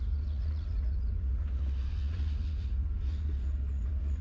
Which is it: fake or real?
fake